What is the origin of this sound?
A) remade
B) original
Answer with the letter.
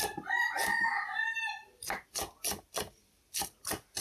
B